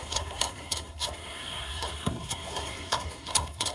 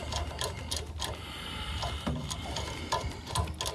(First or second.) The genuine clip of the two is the second